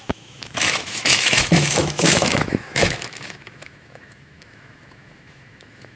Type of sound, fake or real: fake